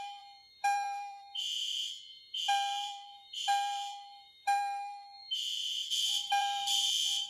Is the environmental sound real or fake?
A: fake